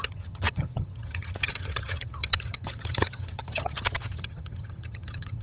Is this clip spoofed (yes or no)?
yes